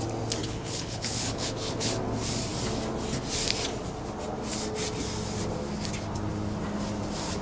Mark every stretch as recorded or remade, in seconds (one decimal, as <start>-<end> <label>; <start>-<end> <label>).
0.0-0.4 recorded; 0.4-1.9 remade; 1.9-7.4 recorded